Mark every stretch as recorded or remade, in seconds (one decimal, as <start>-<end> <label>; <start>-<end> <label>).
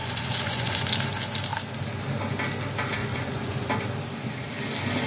0.0-0.9 remade; 0.9-3.0 recorded; 3.0-3.7 remade; 3.7-5.1 recorded